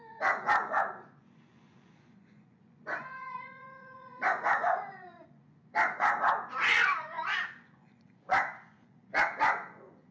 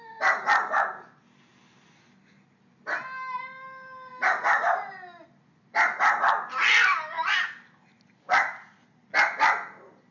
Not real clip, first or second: first